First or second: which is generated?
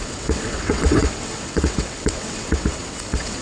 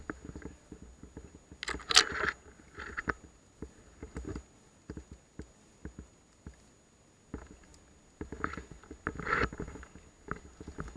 first